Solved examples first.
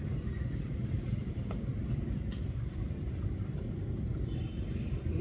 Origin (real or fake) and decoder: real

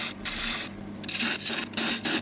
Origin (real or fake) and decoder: real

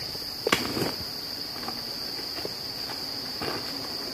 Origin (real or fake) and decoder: fake, vocoder, BigVGAN v2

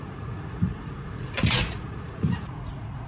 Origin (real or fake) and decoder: fake, vocoder, Vocos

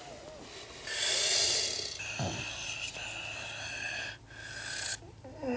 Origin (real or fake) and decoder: real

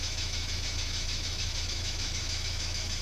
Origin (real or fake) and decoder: fake, autoencoder, DAC-VAE